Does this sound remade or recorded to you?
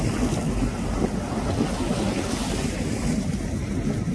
recorded